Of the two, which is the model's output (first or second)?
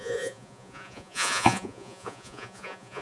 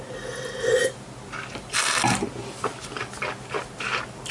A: first